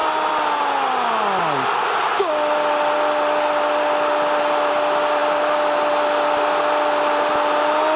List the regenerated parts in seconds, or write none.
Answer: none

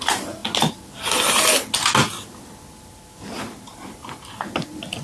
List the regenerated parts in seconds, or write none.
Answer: none

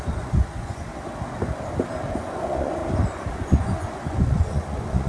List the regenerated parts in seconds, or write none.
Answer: 0.0-0.9; 2.1-2.8; 3.3-5.1

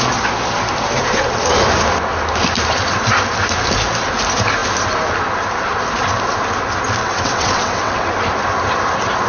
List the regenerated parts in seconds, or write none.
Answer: 7.0-8.1

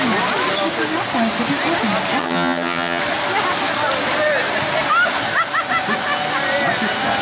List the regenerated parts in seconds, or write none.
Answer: 2.2-3.0

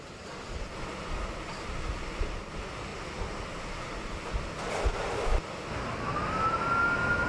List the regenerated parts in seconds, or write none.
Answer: none

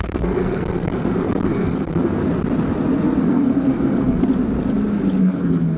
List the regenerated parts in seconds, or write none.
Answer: 0.0-2.2; 3.2-4.2; 5.2-5.8